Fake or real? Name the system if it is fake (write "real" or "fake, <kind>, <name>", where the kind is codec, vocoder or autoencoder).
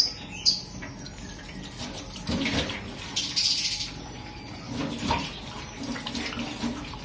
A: real